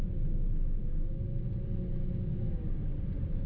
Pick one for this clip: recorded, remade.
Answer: recorded